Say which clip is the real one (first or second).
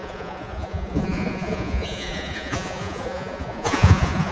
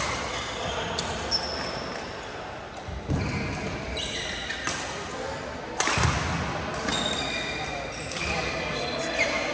second